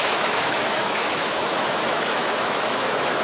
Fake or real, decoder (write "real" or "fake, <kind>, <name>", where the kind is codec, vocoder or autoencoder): fake, autoencoder, DAC-VAE